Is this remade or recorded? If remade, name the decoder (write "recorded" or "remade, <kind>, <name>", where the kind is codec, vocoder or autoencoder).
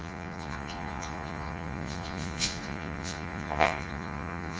remade, vocoder, Vocos